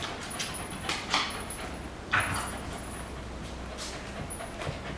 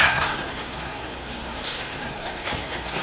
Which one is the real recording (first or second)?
first